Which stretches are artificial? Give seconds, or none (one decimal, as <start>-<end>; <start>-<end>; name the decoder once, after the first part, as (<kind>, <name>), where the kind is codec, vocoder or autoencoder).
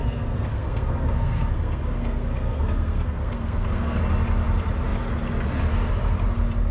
0.0-4.0 (codec, SNAC)